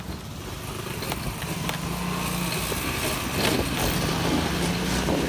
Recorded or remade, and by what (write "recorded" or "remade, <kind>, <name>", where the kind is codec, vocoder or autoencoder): recorded